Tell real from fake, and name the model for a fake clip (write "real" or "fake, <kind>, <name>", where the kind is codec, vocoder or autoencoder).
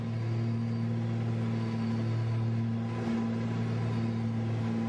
real